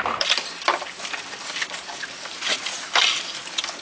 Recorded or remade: recorded